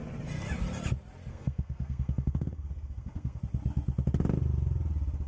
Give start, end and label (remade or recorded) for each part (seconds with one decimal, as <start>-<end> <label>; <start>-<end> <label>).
0.0-1.3 recorded; 1.3-3.4 remade; 3.4-5.3 recorded